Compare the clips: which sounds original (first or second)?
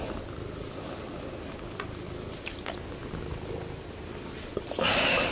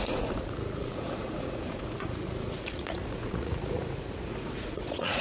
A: first